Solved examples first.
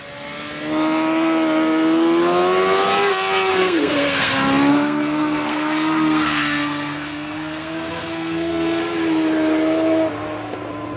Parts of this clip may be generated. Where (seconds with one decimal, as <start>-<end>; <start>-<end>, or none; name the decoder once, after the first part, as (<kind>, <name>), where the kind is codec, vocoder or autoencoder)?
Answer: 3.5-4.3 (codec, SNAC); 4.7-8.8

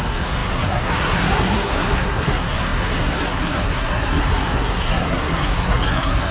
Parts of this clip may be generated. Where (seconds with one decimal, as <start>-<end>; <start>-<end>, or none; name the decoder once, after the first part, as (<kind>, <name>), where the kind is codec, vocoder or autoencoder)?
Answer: 0.0-6.3 (codec, SNAC)

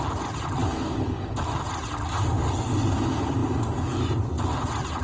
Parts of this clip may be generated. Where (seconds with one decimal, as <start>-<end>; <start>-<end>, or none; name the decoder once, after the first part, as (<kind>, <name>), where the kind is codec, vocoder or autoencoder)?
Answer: none